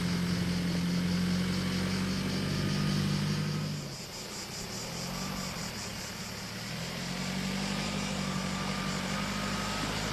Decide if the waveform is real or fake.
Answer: real